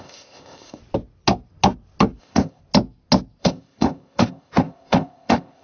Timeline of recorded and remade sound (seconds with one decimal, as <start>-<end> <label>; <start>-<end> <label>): 0.0-0.8 remade; 0.8-2.2 recorded; 2.2-2.6 remade; 2.6-3.4 recorded; 3.4-5.6 remade